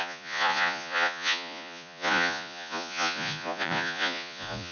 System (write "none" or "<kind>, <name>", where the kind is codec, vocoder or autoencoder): vocoder, Vocos